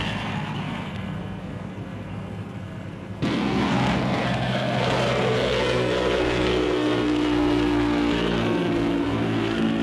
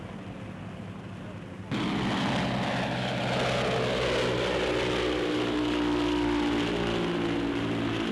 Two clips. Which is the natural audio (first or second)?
second